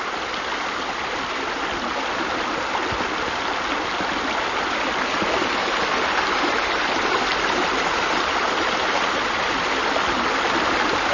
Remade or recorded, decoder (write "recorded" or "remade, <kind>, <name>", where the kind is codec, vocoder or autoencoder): recorded